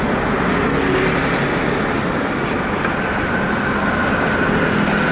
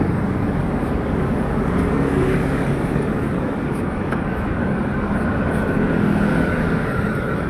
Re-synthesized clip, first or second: second